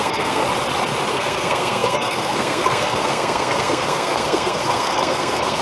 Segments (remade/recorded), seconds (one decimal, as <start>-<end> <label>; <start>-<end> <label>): 0.0-0.4 remade; 0.4-1.1 recorded; 1.1-5.6 remade